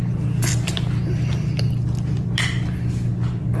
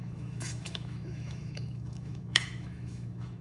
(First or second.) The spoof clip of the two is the second